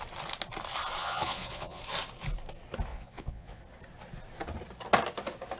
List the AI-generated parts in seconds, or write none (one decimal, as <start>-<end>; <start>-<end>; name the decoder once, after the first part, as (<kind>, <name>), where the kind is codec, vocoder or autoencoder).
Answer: 1.0-1.8 (vocoder, Vocos); 2.9-3.6